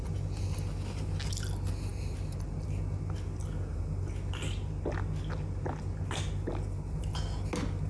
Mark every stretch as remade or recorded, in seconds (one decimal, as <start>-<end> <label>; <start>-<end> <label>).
0.0-7.9 recorded